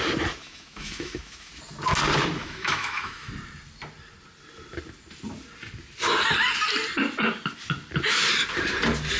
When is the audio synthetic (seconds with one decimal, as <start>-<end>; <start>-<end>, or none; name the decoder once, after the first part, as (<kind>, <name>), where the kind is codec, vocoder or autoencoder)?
0.4-1.5 (autoencoder, DAC-VAE); 2.4-3.3